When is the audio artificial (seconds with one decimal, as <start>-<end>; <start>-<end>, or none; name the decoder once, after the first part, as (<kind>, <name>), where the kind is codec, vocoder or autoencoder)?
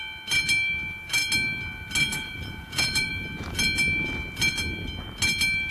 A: 2.1-3.1 (vocoder, Vocos)